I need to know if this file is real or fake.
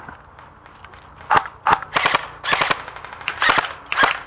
real